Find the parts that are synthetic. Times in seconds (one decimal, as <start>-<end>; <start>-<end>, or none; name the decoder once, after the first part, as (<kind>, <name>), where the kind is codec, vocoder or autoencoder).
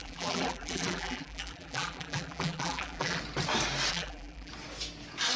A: 0.0-3.2 (vocoder, BigVGAN v2); 3.9-4.5